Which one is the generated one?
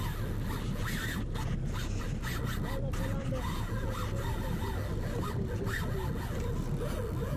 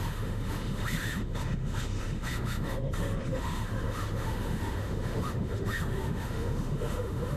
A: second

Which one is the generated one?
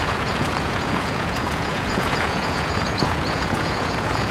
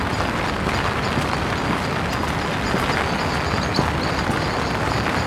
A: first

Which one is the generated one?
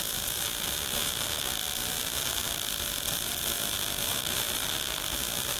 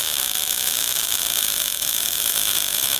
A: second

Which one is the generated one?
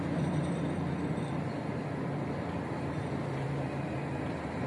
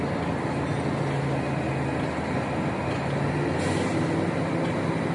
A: first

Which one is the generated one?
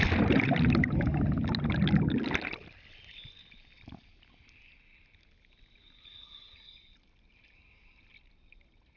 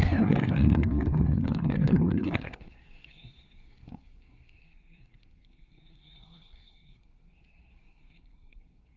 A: second